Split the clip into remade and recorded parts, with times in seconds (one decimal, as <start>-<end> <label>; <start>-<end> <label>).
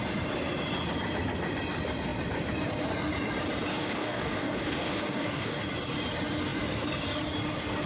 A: 0.0-3.7 recorded; 3.7-5.6 remade; 5.6-7.9 recorded